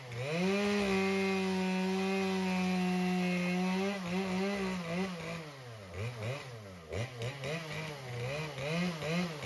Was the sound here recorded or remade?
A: recorded